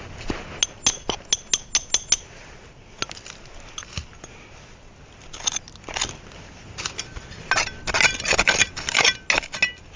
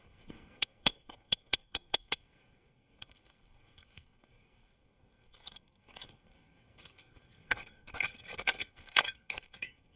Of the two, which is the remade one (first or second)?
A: second